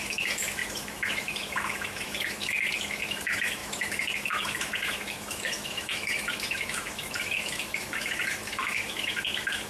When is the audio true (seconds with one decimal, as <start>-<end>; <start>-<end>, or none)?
none